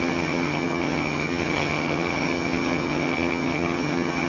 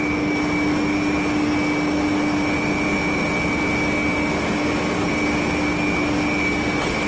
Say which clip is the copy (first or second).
first